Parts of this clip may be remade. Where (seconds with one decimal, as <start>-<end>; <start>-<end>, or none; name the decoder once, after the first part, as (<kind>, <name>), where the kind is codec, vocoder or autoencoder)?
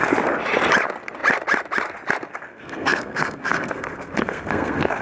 2.5-5.0 (codec, SNAC)